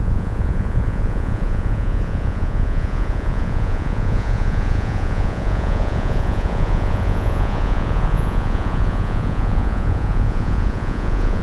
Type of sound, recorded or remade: remade